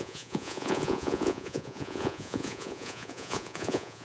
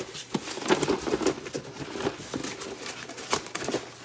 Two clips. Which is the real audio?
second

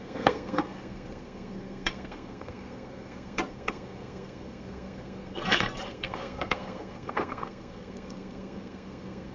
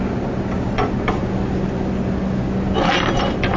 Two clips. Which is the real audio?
second